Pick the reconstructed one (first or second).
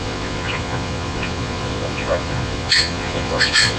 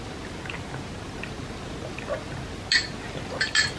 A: first